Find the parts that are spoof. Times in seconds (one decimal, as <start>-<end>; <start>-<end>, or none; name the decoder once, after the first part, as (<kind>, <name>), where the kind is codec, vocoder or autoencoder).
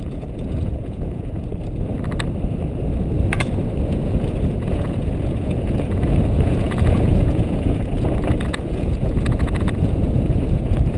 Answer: 0.0-1.5 (vocoder, Vocos); 3.9-11.0